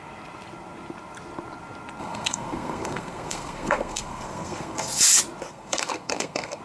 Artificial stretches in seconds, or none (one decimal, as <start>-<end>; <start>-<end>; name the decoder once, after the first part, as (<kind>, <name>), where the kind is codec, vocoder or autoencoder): 2.0-5.0 (codec, SNAC); 5.5-6.6